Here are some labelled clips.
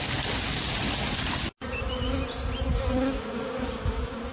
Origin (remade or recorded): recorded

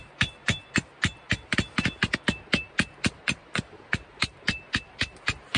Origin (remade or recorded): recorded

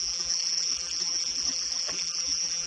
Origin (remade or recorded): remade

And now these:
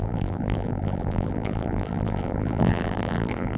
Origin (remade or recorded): remade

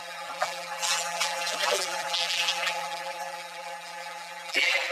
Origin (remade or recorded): remade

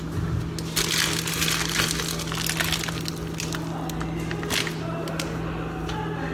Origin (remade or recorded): recorded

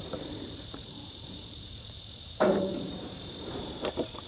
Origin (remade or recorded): remade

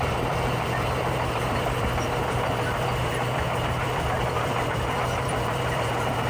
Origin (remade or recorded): remade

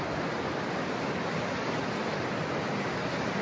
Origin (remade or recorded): recorded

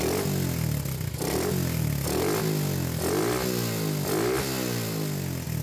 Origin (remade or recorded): recorded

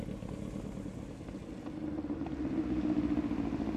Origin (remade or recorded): recorded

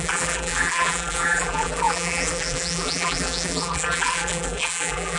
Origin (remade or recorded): remade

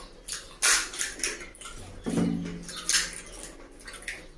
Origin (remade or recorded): recorded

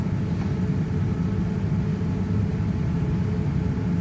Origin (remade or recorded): recorded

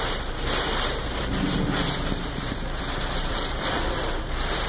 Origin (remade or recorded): remade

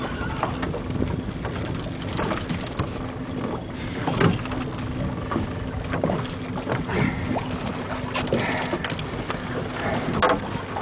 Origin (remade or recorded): recorded